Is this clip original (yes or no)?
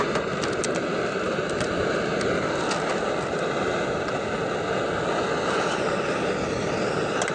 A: yes